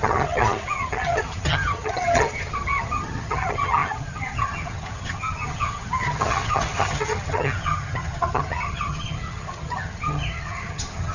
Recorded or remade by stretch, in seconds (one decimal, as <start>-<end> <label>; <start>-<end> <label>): 0.0-11.1 remade